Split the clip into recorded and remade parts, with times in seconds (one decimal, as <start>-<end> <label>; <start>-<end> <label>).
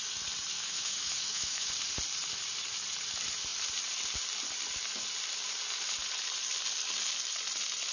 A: 0.0-0.5 recorded; 0.5-1.7 remade; 1.7-7.9 recorded